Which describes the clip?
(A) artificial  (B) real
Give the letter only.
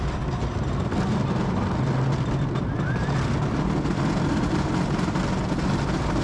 B